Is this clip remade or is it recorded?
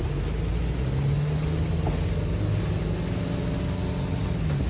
recorded